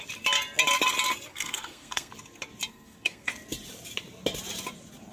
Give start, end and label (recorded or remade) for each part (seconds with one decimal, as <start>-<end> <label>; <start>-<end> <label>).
0.0-1.3 recorded; 1.3-2.1 remade; 2.1-2.7 recorded; 2.7-3.3 remade; 3.3-5.1 recorded